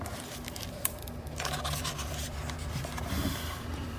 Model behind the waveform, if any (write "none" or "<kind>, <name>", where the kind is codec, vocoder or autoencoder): vocoder, BigVGAN v2